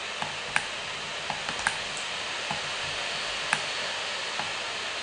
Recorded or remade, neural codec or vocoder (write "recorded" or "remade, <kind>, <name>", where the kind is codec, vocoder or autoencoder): recorded